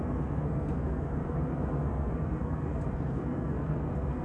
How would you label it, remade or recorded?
remade